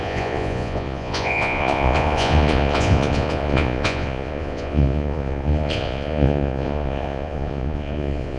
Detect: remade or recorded remade